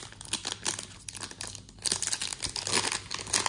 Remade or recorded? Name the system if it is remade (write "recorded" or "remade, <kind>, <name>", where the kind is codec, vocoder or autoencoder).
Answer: recorded